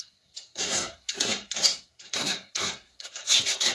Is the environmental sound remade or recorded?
remade